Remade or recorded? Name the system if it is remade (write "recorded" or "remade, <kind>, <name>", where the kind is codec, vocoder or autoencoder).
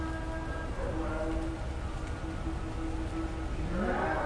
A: recorded